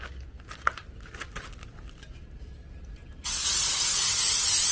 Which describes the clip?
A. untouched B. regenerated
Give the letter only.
A